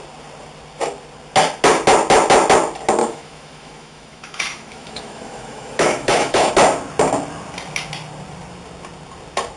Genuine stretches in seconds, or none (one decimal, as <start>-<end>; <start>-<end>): 0.0-3.0; 6.5-9.6

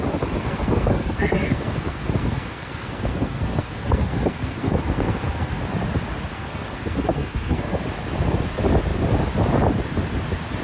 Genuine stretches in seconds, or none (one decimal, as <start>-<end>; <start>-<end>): 0.0-0.4; 5.6-6.3; 7.8-10.6

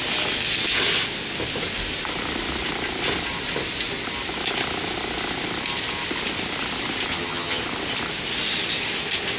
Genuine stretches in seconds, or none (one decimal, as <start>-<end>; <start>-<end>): 0.0-7.1; 7.6-9.4

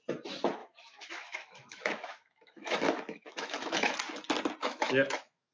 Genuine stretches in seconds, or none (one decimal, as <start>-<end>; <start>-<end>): 0.0-0.6; 3.9-4.6

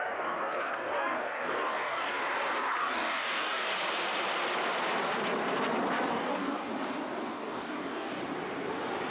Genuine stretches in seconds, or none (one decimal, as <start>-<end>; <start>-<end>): 2.2-2.8; 3.7-6.1; 6.7-7.3; 8.2-9.1

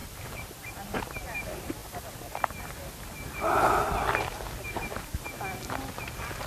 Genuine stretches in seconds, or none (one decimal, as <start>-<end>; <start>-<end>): 1.0-6.5

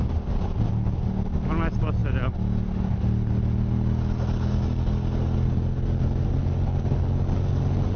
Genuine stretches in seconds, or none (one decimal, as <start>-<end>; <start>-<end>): 0.0-8.0